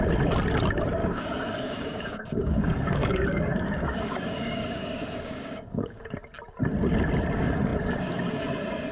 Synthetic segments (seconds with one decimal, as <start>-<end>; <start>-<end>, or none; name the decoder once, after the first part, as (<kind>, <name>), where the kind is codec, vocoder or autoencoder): 1.0-6.0 (codec, DAC)

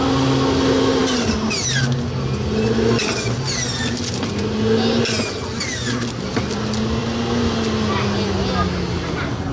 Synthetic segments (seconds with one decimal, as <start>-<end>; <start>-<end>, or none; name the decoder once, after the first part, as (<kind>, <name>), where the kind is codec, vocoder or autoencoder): none